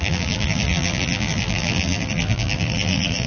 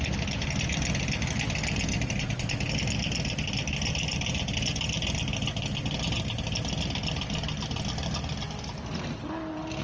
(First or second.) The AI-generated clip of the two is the first